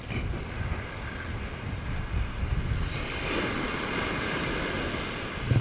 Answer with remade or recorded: recorded